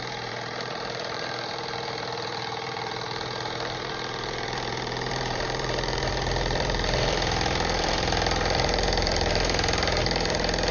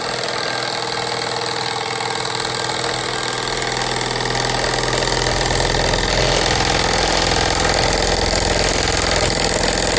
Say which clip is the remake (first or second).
first